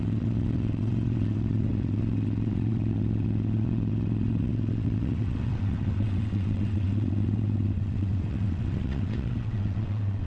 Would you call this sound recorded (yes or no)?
no